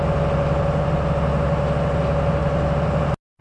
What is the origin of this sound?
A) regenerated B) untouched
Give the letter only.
B